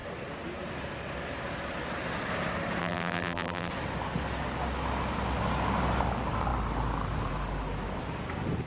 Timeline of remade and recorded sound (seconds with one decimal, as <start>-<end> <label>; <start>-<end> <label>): 0.0-2.8 recorded; 2.8-3.7 remade; 3.7-8.7 recorded